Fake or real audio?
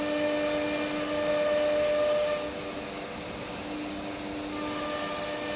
real